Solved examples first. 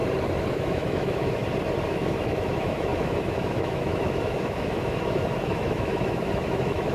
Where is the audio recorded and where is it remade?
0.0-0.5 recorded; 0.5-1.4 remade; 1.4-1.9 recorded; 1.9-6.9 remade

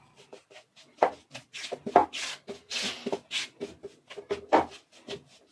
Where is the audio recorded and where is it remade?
0.0-5.5 recorded

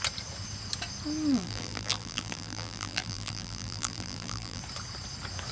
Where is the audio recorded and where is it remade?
0.0-1.3 recorded; 1.3-4.6 remade; 4.6-5.5 recorded

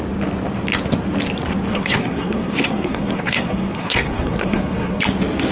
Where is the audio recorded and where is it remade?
0.0-1.7 recorded; 1.7-5.0 remade; 5.0-5.5 recorded

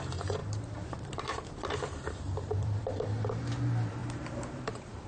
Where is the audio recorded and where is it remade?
0.0-5.1 remade

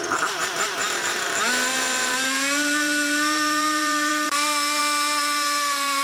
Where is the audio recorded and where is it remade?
0.0-6.0 remade

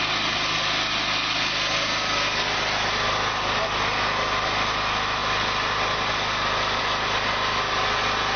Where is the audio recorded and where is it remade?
0.0-8.4 recorded

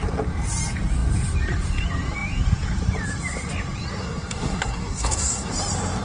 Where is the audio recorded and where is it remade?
0.0-4.0 recorded; 4.0-5.5 remade; 5.5-6.0 recorded